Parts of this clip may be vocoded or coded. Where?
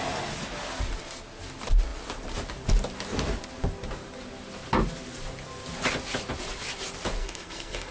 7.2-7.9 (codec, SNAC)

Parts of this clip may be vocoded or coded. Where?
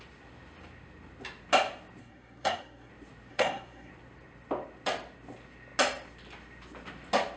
2.0-2.9 (codec, SNAC); 3.3-3.9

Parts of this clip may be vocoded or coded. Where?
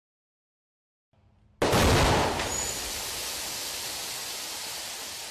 none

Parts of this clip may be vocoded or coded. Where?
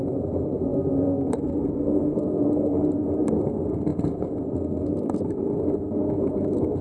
0.0-6.8 (codec, SNAC)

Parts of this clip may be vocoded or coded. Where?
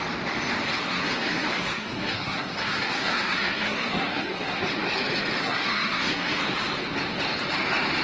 0.8-4.6 (codec, SNAC); 5.4-6.4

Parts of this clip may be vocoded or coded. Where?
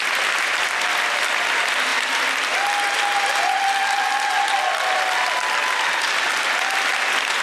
none